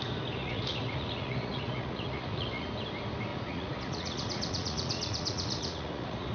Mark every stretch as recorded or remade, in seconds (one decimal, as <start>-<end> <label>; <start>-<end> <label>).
0.0-0.4 recorded; 0.4-2.7 remade; 2.7-3.3 recorded; 3.3-6.3 remade